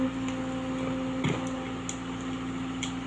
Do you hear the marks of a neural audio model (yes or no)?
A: no